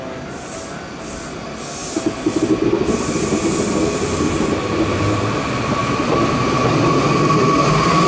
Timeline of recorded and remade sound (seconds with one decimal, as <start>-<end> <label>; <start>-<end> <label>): 0.0-8.1 recorded